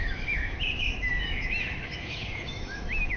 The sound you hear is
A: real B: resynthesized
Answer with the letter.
B